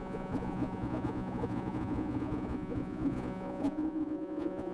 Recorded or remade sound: remade